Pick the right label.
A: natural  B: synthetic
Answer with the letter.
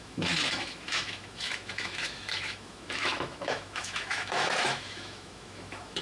B